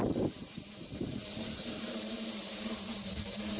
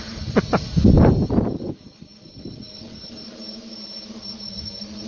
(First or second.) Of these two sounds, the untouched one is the second